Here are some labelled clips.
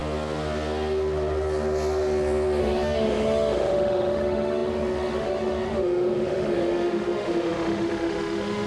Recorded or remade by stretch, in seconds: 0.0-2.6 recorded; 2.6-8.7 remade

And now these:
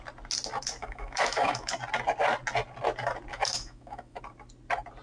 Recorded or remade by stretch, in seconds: 0.0-0.8 recorded; 0.8-1.7 remade; 1.7-3.3 recorded; 3.3-4.2 remade; 4.2-5.0 recorded

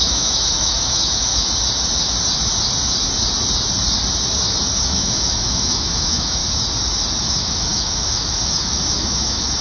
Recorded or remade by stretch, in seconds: 0.0-1.3 remade; 1.3-4.8 recorded; 4.8-6.4 remade; 6.4-7.2 recorded; 7.2-9.6 remade

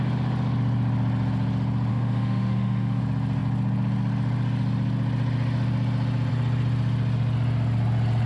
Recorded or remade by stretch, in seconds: 0.0-1.9 recorded; 1.9-3.0 remade; 3.0-8.3 recorded

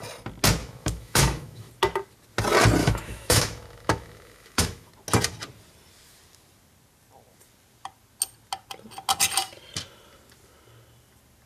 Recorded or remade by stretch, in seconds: 0.0-0.6 recorded; 0.6-1.7 remade; 1.7-2.8 recorded; 2.8-4.9 remade; 4.9-11.5 recorded